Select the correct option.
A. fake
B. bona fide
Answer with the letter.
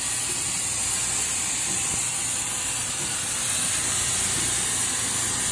B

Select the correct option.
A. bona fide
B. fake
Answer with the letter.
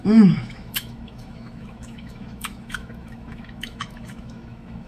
B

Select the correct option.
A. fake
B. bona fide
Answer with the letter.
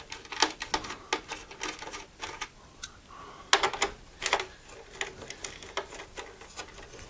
B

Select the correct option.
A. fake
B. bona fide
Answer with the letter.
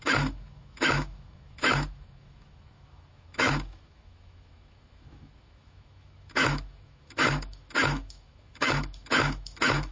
A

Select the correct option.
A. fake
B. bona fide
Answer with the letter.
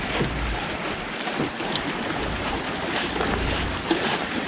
B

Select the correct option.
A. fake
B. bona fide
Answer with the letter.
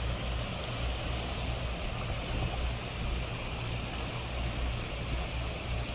B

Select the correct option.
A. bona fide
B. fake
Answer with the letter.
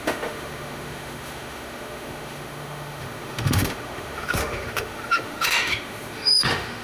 B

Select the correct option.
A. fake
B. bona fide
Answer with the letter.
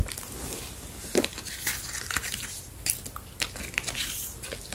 B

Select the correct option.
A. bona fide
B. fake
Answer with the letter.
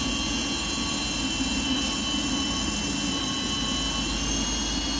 A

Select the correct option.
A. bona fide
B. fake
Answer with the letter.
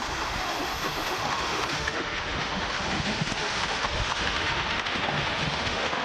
B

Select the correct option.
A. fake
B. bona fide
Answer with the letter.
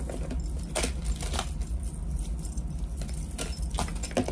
B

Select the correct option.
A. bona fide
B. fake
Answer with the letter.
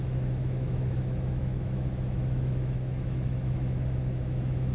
B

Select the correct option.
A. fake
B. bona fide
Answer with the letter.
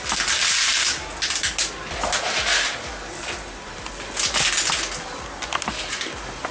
B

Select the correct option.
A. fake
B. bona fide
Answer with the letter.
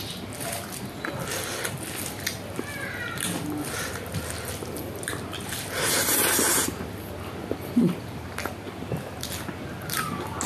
B